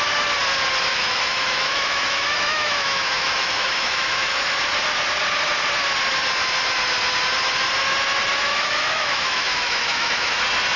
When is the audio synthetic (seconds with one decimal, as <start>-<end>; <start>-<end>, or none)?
0.9-4.6; 8.5-10.4